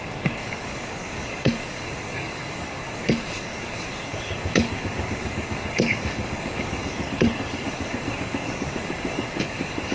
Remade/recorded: remade